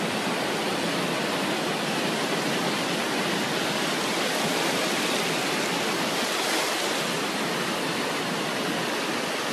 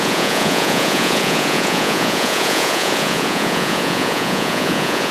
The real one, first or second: first